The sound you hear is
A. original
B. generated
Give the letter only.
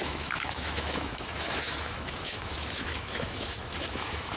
B